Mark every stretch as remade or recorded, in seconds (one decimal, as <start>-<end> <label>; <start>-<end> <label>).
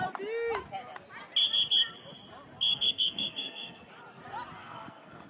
0.0-2.7 recorded; 2.7-3.9 remade; 3.9-4.6 recorded; 4.6-5.3 remade